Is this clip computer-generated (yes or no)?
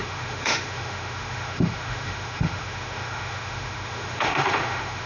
yes